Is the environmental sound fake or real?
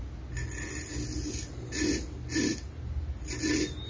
real